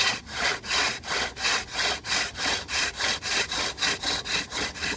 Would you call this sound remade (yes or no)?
no